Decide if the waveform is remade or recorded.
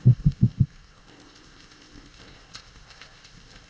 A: remade